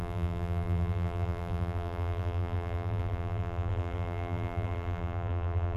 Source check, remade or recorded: remade